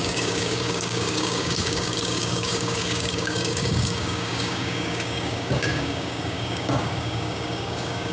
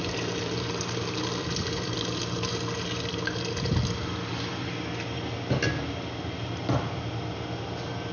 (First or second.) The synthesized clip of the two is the first